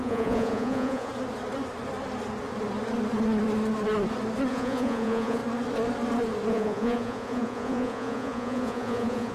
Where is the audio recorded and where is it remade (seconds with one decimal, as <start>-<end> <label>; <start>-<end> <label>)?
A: 0.0-1.1 remade; 1.1-4.5 recorded; 4.5-5.4 remade; 5.4-6.5 recorded; 6.5-9.3 remade